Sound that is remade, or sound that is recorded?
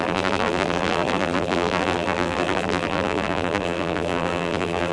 remade